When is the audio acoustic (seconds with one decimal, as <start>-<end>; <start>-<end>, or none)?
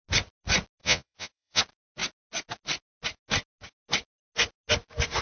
0.0-0.8; 1.6-5.2